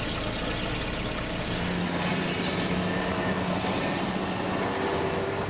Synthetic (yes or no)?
no